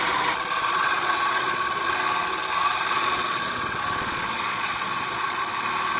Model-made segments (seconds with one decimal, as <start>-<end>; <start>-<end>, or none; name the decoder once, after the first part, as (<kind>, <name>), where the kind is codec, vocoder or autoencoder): 0.6-1.9 (vocoder, Vocos); 2.6-5.4